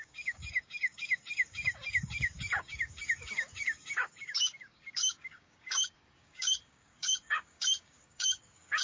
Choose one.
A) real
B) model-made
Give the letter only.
B